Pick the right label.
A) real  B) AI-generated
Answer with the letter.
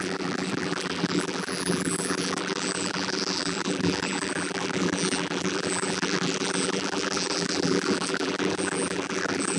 B